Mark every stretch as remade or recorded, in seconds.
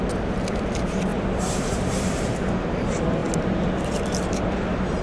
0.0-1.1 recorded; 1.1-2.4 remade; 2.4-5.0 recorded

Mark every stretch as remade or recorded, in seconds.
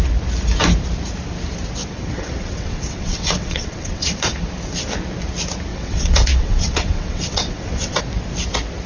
0.0-1.8 recorded; 1.8-4.4 remade; 4.4-5.7 recorded; 5.7-8.0 remade; 8.0-8.9 recorded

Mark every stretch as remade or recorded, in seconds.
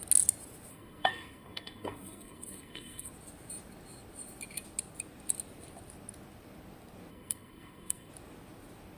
0.0-0.7 recorded; 0.7-3.1 remade; 3.1-7.1 recorded; 7.1-8.1 remade; 8.1-9.0 recorded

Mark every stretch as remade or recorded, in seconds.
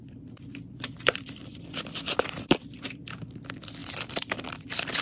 0.0-5.0 remade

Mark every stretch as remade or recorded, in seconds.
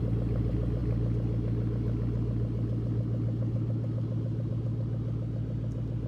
0.0-6.1 recorded